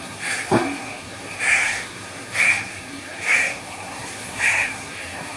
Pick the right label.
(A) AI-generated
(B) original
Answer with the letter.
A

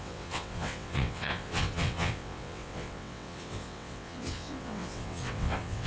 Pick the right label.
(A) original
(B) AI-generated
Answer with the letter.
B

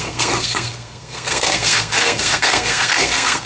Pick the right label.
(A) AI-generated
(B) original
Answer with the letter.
A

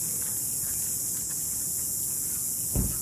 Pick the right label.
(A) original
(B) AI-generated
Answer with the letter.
A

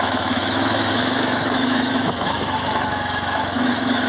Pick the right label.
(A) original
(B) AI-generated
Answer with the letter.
B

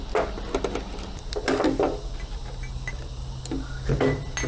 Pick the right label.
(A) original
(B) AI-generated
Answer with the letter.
A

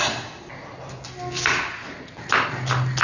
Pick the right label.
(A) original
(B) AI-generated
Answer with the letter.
A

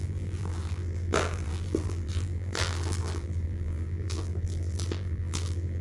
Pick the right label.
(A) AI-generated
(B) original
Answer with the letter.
A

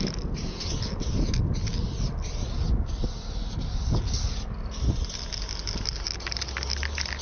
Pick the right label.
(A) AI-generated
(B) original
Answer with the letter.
B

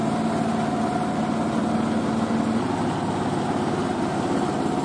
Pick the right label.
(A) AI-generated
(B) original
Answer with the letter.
B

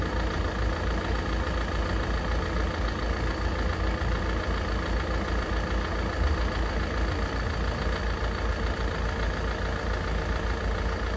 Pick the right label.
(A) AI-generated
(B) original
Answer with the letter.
B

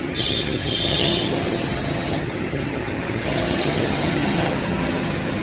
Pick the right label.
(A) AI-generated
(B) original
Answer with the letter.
A